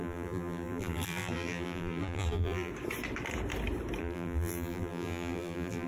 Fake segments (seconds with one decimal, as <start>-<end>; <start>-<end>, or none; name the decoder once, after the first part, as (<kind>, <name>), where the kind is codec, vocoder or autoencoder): 0.0-2.7 (vocoder, BigVGAN v2); 4.0-5.9